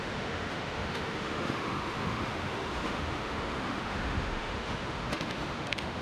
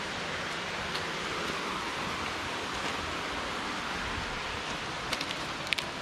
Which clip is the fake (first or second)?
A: first